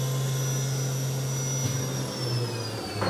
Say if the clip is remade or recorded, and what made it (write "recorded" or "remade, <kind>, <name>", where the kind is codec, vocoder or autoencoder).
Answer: recorded